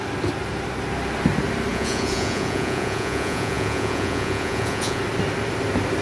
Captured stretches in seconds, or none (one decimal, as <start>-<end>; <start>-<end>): 0.0-1.7; 5.0-6.0